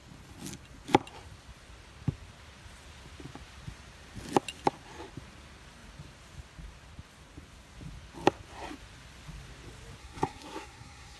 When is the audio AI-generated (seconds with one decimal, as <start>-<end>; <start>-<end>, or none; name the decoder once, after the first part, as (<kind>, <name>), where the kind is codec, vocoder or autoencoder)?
10.0-11.2 (codec, SNAC)